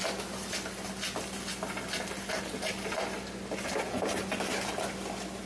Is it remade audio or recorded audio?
recorded